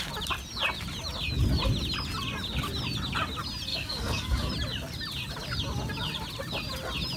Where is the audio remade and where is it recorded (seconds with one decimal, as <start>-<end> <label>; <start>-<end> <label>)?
0.0-3.7 recorded; 3.7-4.5 remade; 4.5-7.2 recorded